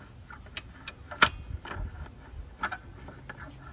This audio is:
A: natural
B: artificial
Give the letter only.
A